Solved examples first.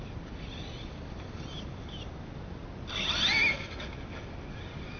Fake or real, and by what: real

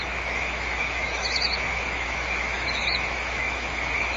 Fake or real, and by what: fake, autoencoder, DAC-VAE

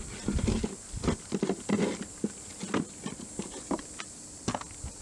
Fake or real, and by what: real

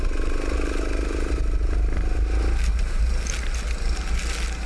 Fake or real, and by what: real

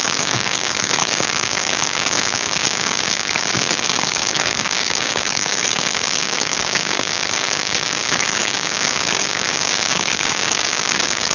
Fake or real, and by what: fake, codec, DAC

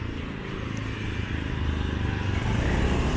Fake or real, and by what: real